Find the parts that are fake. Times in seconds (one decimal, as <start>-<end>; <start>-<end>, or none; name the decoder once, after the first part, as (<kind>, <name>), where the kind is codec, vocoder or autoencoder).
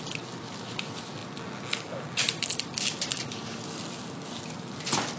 none